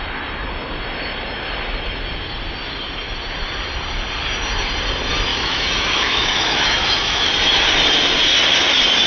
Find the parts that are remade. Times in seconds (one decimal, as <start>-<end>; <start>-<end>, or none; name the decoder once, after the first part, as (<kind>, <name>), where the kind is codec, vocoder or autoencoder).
5.3-7.3 (autoencoder, DAC-VAE)